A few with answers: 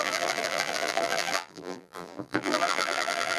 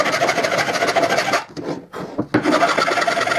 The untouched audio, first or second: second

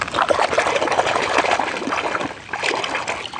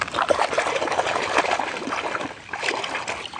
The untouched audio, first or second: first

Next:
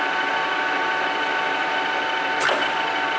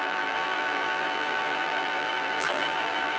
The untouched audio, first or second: first